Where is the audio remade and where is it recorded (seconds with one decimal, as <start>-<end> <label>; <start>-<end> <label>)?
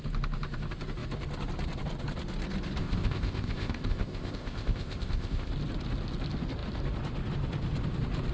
0.0-2.8 recorded; 2.8-5.5 remade; 5.5-8.3 recorded